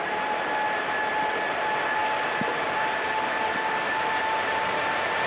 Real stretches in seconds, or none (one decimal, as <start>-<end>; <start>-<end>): 0.0-5.3